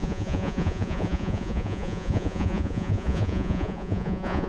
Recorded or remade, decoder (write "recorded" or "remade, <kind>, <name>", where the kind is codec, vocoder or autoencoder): remade, vocoder, Vocos